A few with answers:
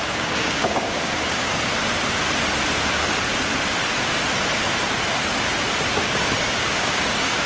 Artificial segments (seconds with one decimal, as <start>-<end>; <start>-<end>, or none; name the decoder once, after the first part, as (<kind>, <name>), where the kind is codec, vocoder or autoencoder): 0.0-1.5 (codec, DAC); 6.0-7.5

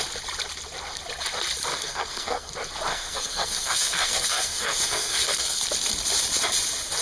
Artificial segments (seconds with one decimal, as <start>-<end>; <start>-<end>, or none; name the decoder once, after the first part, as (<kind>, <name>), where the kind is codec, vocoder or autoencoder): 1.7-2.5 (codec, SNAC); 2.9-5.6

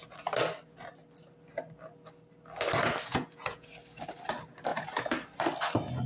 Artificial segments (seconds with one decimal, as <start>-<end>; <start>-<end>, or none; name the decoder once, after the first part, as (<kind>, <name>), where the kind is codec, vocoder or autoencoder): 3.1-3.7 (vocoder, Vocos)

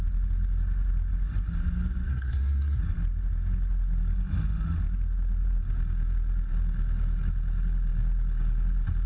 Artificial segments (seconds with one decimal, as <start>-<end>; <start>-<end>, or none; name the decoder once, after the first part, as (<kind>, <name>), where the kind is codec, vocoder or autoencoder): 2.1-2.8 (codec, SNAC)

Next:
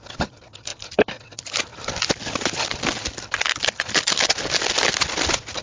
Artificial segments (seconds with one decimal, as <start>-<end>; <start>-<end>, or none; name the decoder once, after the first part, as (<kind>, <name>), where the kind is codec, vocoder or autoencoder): 1.7-5.1 (vocoder, BigVGAN v2)

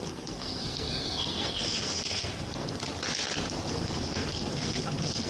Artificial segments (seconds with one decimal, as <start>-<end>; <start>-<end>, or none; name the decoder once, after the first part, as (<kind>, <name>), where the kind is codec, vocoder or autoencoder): 0.0-2.8 (codec, SNAC); 3.7-5.3